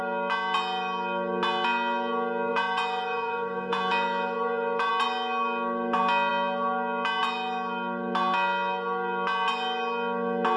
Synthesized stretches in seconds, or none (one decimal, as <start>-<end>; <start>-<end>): 2.5-4.9